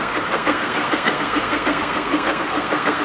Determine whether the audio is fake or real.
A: fake